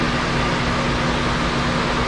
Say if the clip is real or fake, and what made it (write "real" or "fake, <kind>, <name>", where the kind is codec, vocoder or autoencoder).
real